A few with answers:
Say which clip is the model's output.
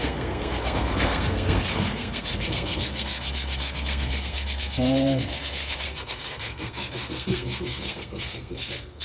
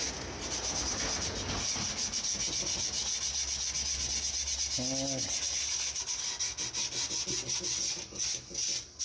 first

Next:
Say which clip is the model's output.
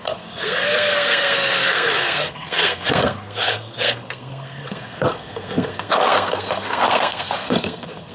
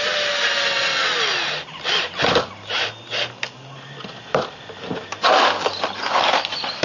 first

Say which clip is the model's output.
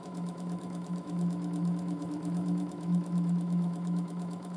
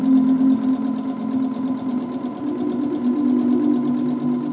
first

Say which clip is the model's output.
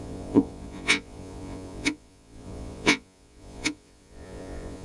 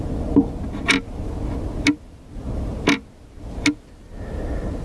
first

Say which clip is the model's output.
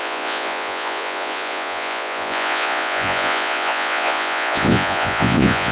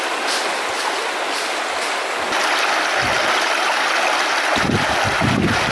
first